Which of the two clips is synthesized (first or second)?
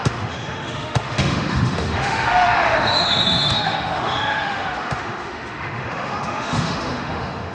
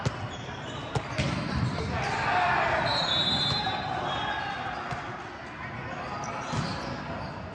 first